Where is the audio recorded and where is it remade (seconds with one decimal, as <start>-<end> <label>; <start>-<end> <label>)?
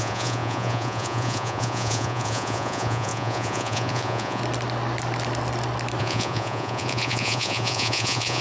0.0-4.4 remade; 4.4-6.0 recorded; 6.0-8.4 remade